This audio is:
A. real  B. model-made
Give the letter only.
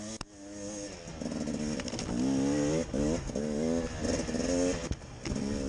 A